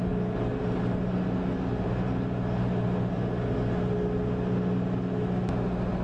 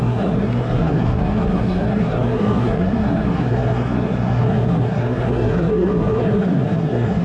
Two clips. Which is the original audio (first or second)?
first